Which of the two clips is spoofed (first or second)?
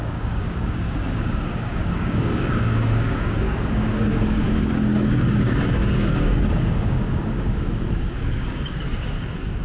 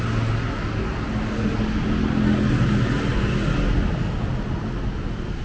first